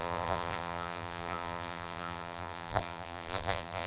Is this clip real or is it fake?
fake